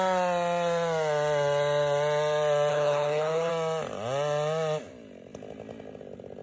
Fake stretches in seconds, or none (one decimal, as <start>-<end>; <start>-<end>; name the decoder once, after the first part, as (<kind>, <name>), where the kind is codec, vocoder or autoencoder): 2.7-3.5 (codec, HILCodec)

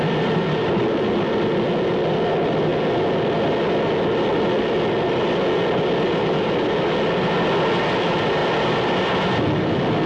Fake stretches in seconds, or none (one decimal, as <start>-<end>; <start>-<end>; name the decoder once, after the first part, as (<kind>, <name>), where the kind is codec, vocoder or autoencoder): none

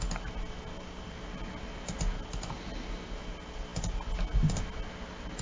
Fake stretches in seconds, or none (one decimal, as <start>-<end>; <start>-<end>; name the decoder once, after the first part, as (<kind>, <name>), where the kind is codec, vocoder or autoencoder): none

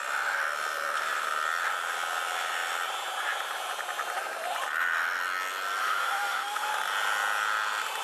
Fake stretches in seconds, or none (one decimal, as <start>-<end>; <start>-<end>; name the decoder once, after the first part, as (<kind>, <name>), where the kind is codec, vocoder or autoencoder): 5.8-6.7 (autoencoder, DAC-VAE)

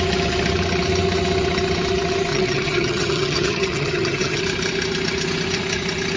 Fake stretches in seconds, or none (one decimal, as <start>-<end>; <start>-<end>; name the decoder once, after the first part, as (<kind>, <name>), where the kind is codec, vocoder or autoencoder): 2.3-4.4 (vocoder, HiFi-GAN)

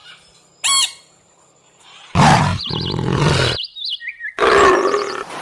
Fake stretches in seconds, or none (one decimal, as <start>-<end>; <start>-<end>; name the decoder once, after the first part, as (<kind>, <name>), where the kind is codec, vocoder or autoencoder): none

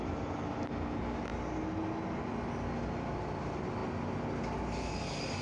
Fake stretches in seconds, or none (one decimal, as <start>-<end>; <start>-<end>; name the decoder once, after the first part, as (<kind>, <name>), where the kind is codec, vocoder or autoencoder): none